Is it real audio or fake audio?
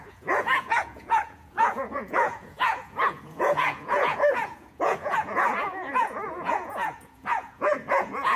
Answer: fake